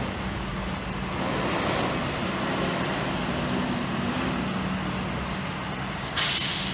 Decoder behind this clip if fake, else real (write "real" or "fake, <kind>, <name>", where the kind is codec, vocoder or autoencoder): real